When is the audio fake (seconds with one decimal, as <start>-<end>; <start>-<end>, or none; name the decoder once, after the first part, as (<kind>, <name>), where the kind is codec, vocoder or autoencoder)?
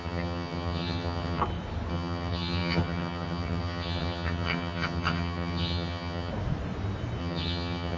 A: 0.0-1.4 (vocoder, HiFi-GAN); 1.9-6.3; 7.2-8.0